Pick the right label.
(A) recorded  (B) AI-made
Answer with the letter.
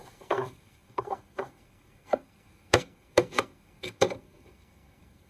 B